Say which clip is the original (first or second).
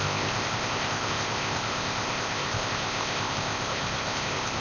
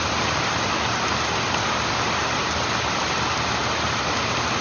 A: second